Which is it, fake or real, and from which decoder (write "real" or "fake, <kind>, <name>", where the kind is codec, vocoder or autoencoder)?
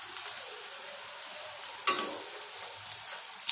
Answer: real